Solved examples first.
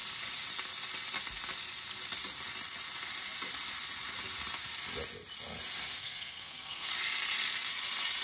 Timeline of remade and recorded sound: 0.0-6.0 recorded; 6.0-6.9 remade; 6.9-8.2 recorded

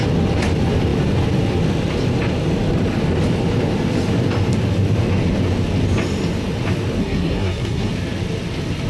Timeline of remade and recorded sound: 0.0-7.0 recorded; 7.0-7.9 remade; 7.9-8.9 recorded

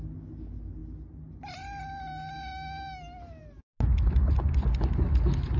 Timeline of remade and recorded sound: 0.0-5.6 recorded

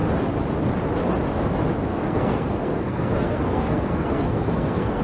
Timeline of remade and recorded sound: 0.0-1.9 recorded; 1.9-5.0 remade